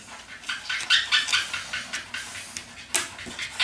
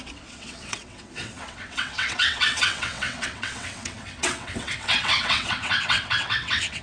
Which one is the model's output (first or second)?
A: second